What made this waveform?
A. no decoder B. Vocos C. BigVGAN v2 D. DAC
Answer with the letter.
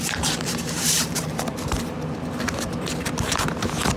C